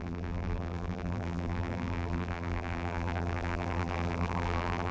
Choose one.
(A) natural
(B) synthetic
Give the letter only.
B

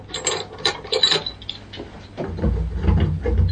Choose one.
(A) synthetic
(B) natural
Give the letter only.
B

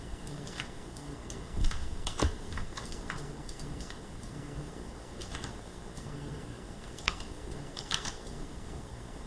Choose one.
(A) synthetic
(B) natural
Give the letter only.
A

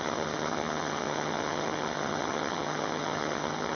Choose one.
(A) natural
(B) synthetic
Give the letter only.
B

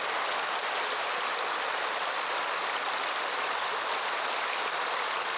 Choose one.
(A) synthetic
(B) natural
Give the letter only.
B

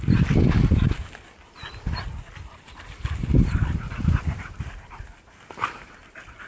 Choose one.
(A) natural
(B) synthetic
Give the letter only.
A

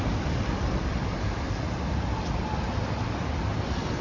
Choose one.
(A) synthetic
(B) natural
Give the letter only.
A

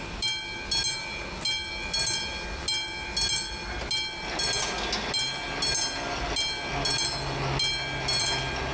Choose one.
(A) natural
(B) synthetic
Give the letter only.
A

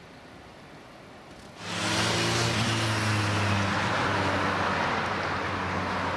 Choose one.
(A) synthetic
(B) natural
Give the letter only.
B